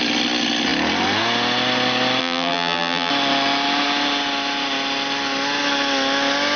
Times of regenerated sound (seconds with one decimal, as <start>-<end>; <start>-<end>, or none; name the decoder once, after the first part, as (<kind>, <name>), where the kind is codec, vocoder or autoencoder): 2.2-3.1 (vocoder, BigVGAN v2)